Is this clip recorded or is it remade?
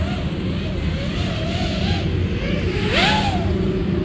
recorded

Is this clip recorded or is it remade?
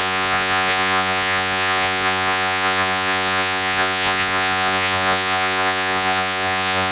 remade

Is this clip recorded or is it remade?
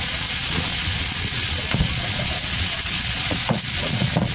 remade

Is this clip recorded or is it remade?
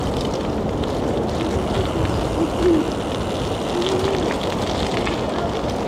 recorded